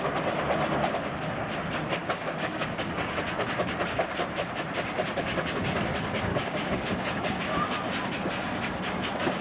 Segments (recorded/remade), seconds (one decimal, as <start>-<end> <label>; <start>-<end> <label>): 0.0-2.0 recorded; 2.0-3.1 remade; 3.1-6.3 recorded; 6.3-7.4 remade; 7.4-9.4 recorded